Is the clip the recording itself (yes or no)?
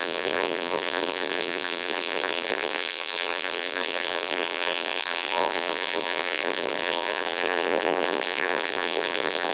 no